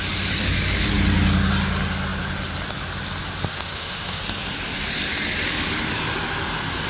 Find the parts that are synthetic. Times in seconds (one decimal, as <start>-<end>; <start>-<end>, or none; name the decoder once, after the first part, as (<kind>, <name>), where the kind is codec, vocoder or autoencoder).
3.5-4.2 (autoencoder, DAC-VAE)